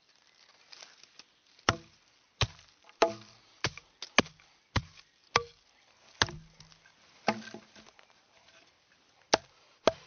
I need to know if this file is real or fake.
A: real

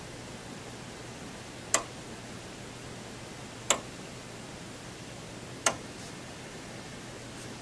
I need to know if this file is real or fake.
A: real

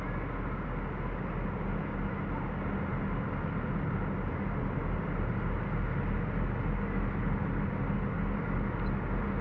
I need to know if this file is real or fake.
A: real